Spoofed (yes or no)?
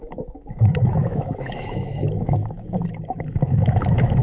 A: yes